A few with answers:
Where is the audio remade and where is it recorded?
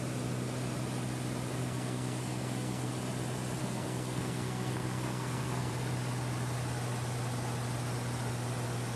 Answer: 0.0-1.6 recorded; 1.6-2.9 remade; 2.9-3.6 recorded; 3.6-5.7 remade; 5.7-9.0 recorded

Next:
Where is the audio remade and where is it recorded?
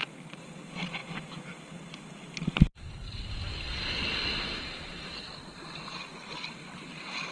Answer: 0.0-7.3 recorded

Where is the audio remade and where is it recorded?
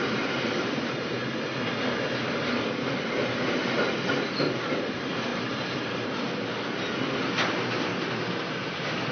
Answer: 0.0-1.2 remade; 1.2-4.7 recorded; 4.7-5.3 remade; 5.3-5.9 recorded; 5.9-6.5 remade; 6.5-7.3 recorded; 7.3-7.9 remade; 7.9-8.7 recorded; 8.7-9.1 remade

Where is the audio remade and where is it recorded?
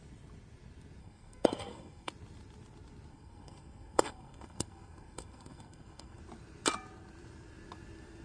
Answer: 0.0-1.0 recorded; 1.0-2.1 remade; 2.1-3.1 recorded; 3.1-6.2 remade; 6.2-8.2 recorded